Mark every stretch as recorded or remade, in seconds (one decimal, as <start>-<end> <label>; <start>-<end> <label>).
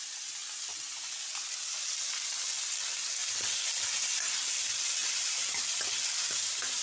0.0-6.8 recorded